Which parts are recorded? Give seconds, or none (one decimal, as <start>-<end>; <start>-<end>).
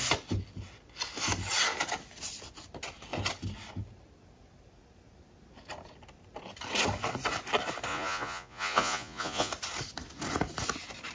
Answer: 0.0-7.9; 9.5-11.1